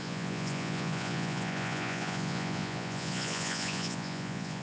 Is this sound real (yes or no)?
no